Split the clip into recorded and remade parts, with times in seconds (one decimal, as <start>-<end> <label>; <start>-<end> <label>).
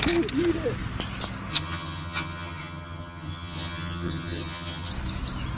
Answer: 0.0-1.5 recorded; 1.5-4.9 remade; 4.9-5.6 recorded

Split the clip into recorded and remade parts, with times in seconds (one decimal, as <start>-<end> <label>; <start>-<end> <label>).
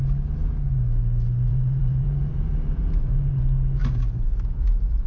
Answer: 0.0-1.5 recorded; 1.5-3.4 remade; 3.4-3.8 recorded; 3.8-5.1 remade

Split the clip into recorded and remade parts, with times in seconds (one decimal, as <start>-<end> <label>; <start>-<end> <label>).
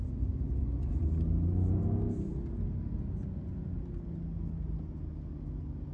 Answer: 0.0-5.9 recorded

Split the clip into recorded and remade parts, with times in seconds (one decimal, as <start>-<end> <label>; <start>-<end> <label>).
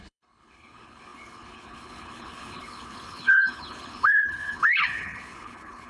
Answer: 0.0-5.9 remade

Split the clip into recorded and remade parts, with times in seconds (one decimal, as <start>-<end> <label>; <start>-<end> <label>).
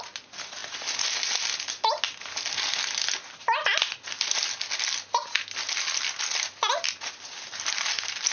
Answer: 0.0-8.3 recorded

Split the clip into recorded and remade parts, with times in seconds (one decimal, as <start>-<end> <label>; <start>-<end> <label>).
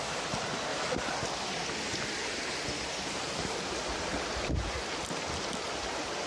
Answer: 0.0-0.7 recorded; 0.7-4.5 remade; 4.5-6.3 recorded